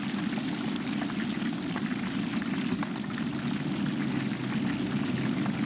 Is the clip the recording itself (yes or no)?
yes